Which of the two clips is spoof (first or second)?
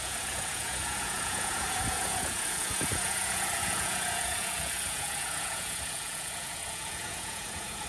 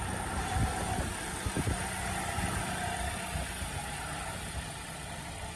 first